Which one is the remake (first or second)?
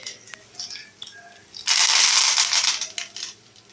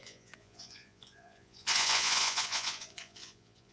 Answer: second